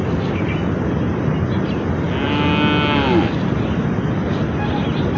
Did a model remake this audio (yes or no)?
no